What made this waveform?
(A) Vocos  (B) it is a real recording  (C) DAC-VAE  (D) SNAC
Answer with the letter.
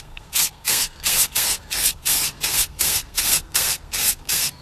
D